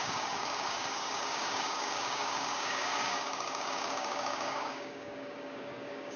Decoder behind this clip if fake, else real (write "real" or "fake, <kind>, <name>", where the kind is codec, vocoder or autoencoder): fake, codec, DAC